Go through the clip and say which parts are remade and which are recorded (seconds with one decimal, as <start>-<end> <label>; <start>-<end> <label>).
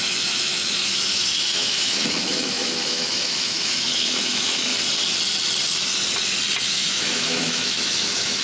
0.0-4.7 remade; 4.7-6.6 recorded; 6.6-8.4 remade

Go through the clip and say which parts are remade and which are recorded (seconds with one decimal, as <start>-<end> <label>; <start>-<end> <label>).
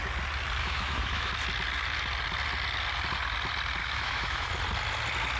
0.0-0.6 recorded; 0.6-1.3 remade; 1.3-3.8 recorded; 3.8-4.5 remade; 4.5-5.4 recorded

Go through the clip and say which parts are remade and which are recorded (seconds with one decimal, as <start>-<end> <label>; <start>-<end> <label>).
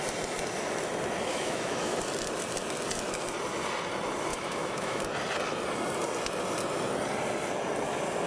0.0-1.3 recorded; 1.3-2.0 remade; 2.0-4.3 recorded; 4.3-5.0 remade; 5.0-8.3 recorded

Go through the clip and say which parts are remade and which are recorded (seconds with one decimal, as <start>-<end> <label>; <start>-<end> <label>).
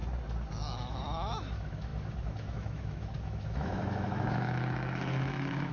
0.0-0.5 recorded; 0.5-5.7 remade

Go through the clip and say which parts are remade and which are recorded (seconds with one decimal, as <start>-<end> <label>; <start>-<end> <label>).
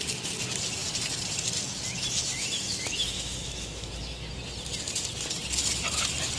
0.0-2.2 recorded; 2.2-4.3 remade; 4.3-6.4 recorded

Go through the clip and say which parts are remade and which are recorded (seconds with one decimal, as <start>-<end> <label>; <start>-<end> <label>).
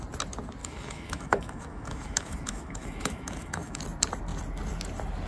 0.0-0.6 recorded; 0.6-3.8 remade; 3.8-5.3 recorded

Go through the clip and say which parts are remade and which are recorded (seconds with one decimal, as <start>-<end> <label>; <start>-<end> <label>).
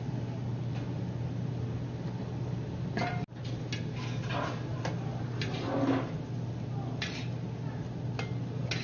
0.0-8.8 recorded